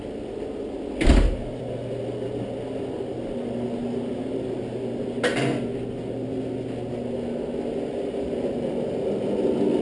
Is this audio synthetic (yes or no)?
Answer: no